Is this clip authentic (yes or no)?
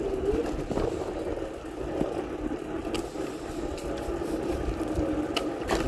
yes